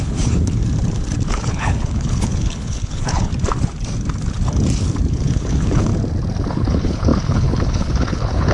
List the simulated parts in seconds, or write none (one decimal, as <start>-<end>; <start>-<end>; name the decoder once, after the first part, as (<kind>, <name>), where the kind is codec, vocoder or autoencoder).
0.0-0.6 (codec, HILCodec); 1.3-3.3; 5.1-5.9; 6.5-8.5

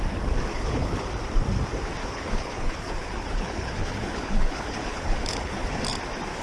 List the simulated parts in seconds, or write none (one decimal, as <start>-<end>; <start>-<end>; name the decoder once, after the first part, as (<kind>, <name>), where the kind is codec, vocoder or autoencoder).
0.5-1.1 (codec, HILCodec); 2.0-5.8

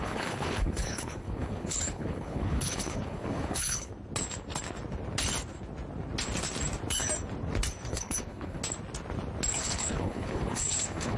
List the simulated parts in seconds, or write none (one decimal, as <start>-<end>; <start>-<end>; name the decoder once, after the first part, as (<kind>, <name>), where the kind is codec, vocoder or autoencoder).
0.0-3.9 (codec, HILCodec); 7.9-8.6; 9.5-11.2

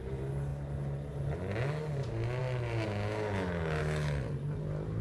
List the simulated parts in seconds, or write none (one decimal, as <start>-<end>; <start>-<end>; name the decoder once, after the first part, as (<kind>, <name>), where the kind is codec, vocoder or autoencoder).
none

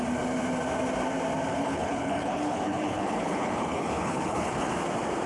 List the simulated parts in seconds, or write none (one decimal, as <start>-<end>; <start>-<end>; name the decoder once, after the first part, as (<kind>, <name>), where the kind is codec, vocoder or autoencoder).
1.5-4.7 (codec, HILCodec)

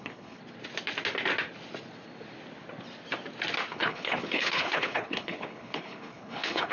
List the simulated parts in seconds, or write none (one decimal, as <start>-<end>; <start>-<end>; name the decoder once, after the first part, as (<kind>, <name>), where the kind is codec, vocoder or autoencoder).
0.0-0.4 (codec, HILCodec); 3.7-6.7